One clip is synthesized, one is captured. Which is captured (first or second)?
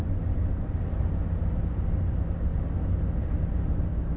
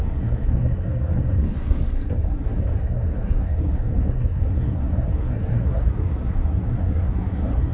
first